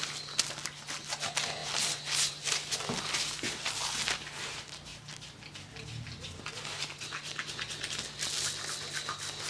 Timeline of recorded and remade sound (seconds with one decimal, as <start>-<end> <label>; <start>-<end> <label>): 0.0-9.5 recorded